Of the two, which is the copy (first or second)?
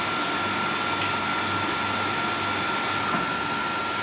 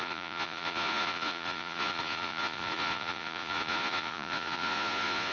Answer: second